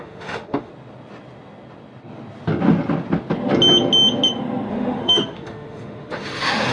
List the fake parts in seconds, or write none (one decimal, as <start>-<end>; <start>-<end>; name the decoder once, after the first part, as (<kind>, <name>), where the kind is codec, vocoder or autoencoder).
0.0-0.7 (autoencoder, DAC-VAE); 4.7-6.7